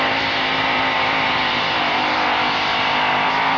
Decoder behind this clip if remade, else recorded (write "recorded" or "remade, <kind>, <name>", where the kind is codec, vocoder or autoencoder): remade, vocoder, BigVGAN v2